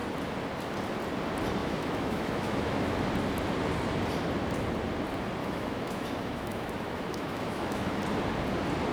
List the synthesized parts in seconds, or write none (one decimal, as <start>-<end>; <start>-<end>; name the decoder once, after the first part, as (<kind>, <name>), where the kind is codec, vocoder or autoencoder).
1.6-3.0 (autoencoder, DAC-VAE); 5.4-8.0